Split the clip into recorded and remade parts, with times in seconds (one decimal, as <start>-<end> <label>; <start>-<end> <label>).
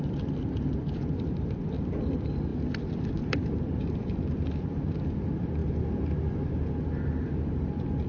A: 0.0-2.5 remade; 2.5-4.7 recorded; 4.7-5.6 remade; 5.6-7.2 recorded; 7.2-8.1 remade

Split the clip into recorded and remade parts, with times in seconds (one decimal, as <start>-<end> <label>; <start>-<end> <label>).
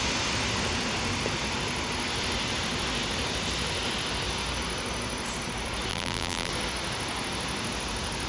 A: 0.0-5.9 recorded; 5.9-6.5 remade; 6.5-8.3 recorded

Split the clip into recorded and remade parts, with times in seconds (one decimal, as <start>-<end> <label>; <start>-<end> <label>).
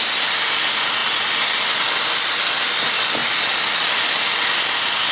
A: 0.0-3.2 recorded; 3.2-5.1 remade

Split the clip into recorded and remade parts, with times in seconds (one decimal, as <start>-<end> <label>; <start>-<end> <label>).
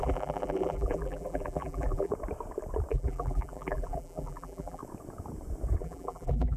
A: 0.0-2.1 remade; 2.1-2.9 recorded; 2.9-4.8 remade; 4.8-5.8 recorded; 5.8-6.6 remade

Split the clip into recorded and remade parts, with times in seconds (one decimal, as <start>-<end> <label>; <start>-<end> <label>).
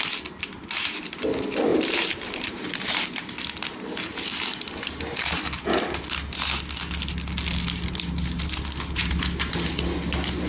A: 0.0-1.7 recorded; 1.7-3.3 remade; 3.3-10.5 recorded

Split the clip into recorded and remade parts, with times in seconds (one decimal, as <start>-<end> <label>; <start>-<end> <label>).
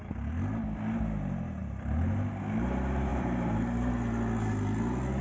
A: 0.0-1.6 recorded; 1.6-2.4 remade; 2.4-3.1 recorded; 3.1-3.9 remade; 3.9-5.2 recorded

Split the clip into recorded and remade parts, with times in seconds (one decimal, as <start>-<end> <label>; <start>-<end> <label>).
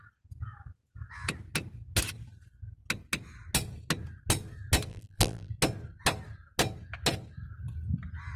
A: 0.0-4.9 recorded; 4.9-5.5 remade; 5.5-8.4 recorded